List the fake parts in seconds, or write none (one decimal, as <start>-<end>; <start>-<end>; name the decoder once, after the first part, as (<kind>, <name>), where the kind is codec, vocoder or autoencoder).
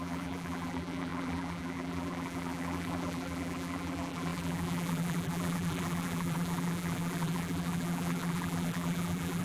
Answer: 0.0-9.4 (vocoder, BigVGAN v2)